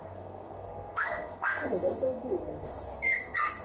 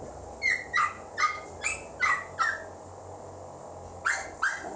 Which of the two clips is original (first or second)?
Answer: second